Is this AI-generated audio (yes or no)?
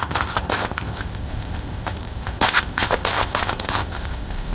yes